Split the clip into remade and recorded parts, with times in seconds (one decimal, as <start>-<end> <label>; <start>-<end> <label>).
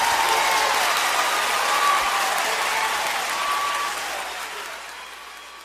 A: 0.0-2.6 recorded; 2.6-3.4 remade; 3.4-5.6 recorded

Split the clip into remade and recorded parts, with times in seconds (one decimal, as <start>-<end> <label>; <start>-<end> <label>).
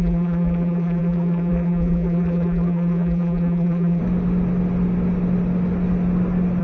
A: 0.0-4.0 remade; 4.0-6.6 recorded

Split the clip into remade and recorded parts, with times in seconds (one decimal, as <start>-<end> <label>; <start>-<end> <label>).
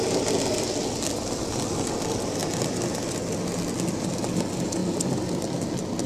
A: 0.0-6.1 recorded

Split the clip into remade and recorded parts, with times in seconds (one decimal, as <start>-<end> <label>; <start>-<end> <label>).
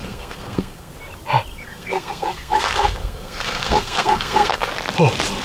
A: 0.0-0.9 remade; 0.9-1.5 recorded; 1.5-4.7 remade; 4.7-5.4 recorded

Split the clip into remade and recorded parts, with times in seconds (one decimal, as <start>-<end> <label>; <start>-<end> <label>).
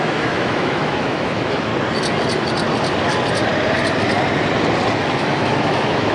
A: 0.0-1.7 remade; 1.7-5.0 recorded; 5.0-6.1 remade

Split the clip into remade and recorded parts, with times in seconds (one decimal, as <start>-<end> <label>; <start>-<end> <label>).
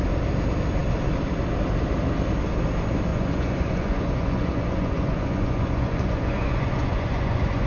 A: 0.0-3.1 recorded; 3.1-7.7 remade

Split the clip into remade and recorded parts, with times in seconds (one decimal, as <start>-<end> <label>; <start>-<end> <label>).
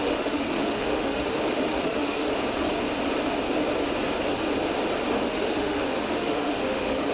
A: 0.0-2.3 remade; 2.3-5.2 recorded; 5.2-7.1 remade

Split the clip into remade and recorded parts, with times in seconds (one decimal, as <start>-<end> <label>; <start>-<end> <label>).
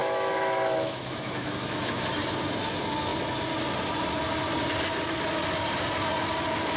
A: 0.0-2.1 remade; 2.1-6.8 recorded